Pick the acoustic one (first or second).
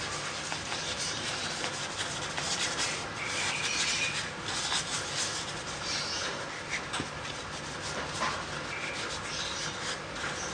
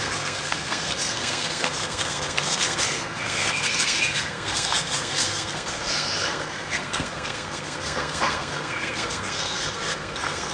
first